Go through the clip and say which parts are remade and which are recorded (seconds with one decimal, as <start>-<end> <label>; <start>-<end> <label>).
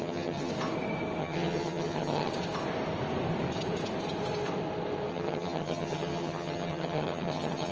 0.0-0.5 remade; 0.5-1.2 recorded; 1.2-2.3 remade; 2.3-5.1 recorded; 5.1-7.7 remade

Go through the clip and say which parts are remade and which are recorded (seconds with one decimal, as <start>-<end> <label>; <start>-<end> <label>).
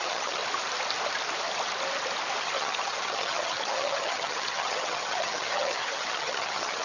0.0-0.4 remade; 0.4-2.4 recorded; 2.4-6.8 remade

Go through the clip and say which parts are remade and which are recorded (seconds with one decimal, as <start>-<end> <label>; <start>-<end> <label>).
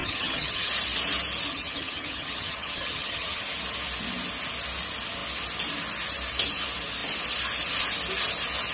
0.0-0.7 remade; 0.7-1.5 recorded; 1.5-3.4 remade; 3.4-8.7 recorded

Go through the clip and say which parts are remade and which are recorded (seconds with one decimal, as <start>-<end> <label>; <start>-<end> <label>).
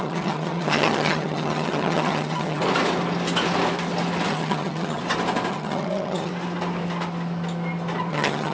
0.0-2.6 remade; 2.6-4.3 recorded; 4.3-5.0 remade; 5.0-5.5 recorded; 5.5-6.3 remade; 6.3-8.1 recorded; 8.1-8.5 remade